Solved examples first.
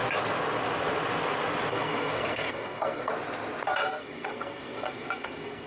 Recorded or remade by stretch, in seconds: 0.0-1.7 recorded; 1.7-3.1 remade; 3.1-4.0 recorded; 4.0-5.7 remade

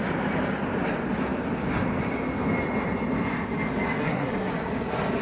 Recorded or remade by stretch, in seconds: 0.0-4.0 recorded; 4.0-4.5 remade; 4.5-5.2 recorded

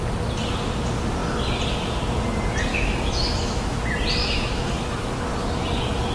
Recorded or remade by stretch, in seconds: 0.0-2.7 recorded; 2.7-3.8 remade; 3.8-4.2 recorded; 4.2-4.7 remade; 4.7-6.1 recorded

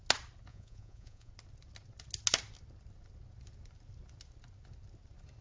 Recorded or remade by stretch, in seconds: 0.0-0.5 recorded; 0.5-1.3 remade; 1.3-5.4 recorded